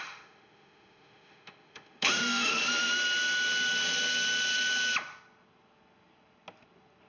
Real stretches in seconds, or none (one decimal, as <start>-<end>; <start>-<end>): 2.5-7.1